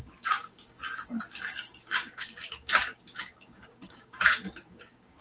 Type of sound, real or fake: fake